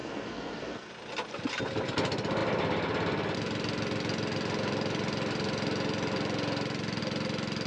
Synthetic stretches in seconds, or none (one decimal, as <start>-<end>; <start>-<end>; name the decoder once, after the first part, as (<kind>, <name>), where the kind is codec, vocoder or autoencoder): 0.0-0.9 (codec, SNAC)